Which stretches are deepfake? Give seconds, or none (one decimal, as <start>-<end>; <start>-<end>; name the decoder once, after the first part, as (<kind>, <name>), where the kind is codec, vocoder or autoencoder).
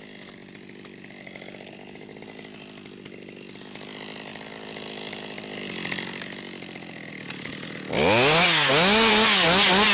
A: none